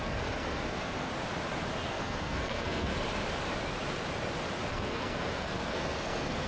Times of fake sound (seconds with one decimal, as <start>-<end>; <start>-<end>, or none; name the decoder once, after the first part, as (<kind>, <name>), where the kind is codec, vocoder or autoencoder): 0.0-1.1 (codec, SNAC); 1.9-2.9; 4.7-6.5